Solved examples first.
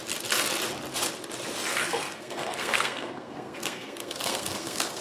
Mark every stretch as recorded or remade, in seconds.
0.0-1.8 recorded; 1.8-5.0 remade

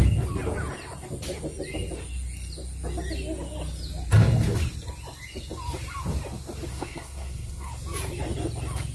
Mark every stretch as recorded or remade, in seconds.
0.0-6.7 recorded; 6.7-7.7 remade; 7.7-8.9 recorded

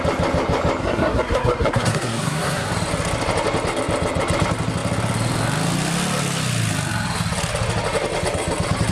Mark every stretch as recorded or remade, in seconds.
0.0-0.8 recorded; 0.8-2.7 remade; 2.7-8.9 recorded